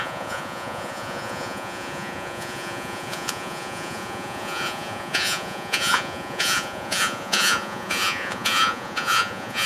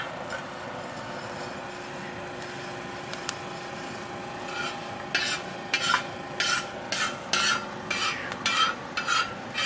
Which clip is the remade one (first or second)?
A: first